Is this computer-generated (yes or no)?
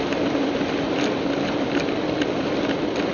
no